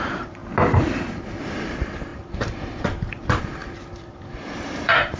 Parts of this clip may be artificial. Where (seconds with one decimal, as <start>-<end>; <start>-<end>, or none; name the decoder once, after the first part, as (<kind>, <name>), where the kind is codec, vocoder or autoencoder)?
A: 0.0-0.4 (vocoder, BigVGAN v2); 1.4-5.2